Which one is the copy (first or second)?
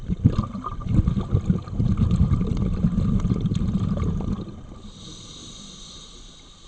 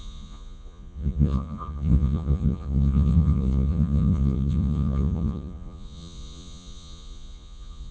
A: second